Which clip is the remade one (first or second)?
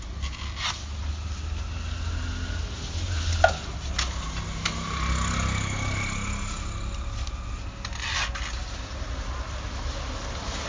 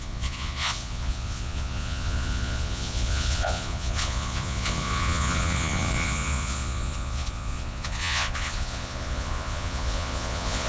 second